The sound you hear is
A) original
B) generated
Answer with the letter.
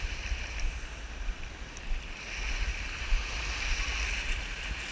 A